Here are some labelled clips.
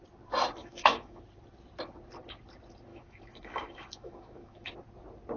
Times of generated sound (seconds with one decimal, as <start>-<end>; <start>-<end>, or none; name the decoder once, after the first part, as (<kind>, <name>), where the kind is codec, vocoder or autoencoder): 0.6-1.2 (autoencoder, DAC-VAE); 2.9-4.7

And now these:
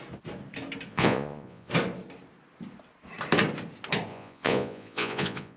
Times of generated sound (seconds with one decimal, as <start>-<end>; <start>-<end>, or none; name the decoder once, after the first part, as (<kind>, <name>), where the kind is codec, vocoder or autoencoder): 0.9-1.7 (vocoder, Vocos); 4.1-5.6

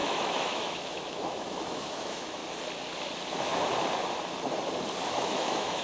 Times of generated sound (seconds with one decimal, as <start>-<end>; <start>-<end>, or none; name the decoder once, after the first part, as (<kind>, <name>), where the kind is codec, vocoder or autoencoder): 0.0-2.4 (autoencoder, DAC-VAE); 5.1-5.8

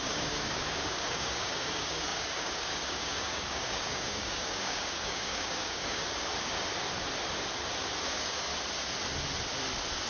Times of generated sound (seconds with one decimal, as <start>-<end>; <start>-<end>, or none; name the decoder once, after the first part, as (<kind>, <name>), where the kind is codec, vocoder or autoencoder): 0.0-6.0 (codec, DAC); 8.1-8.5